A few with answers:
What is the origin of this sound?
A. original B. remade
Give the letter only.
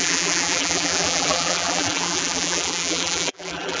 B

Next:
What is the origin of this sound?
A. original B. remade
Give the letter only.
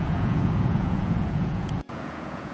B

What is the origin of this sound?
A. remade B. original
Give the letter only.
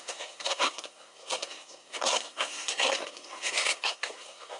A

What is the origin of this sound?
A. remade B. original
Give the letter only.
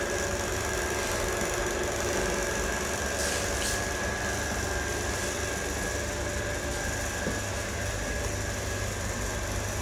B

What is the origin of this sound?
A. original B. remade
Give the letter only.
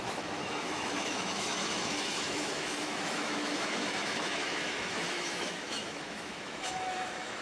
B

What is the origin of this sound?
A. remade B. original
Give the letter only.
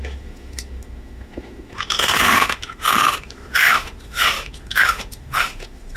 A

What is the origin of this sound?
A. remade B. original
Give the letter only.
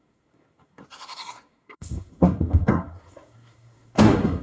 A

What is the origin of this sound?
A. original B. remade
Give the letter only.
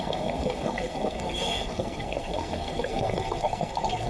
B